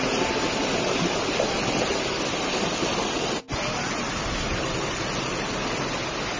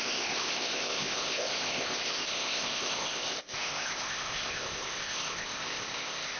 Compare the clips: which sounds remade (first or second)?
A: second